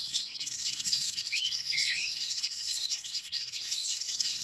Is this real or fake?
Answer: fake